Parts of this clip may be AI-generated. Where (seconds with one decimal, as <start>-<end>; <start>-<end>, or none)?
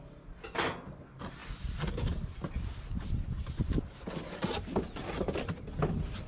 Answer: none